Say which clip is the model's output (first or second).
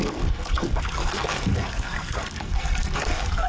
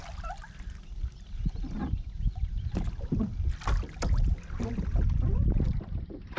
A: first